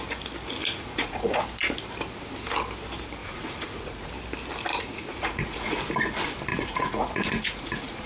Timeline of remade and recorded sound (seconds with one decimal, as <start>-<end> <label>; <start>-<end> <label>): 0.0-0.6 recorded; 0.6-1.4 remade; 1.4-3.2 recorded; 3.2-4.1 remade; 4.1-4.7 recorded; 4.7-5.8 remade; 5.8-6.5 recorded; 6.5-8.1 remade